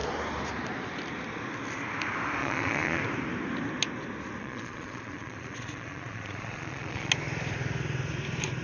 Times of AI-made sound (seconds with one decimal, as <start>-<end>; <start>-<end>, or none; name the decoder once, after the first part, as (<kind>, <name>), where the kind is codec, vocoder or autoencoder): 2.4-3.0 (vocoder, Vocos); 4.4-7.1